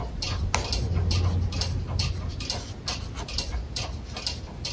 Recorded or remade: recorded